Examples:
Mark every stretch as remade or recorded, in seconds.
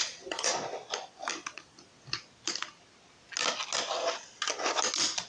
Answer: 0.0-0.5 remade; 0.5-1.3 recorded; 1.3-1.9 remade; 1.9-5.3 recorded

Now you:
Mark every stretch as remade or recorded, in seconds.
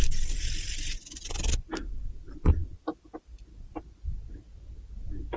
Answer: 0.0-5.4 recorded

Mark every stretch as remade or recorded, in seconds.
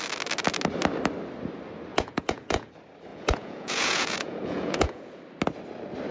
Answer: 0.0-1.9 recorded; 1.9-2.7 remade; 2.7-3.1 recorded; 3.1-5.2 remade; 5.2-6.1 recorded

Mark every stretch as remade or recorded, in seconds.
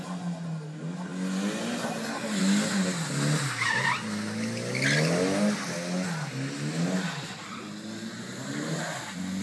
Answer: 0.0-9.4 recorded